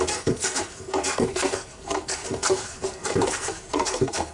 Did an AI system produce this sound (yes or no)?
yes